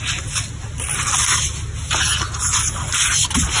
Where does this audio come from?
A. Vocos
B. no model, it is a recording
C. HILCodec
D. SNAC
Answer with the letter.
B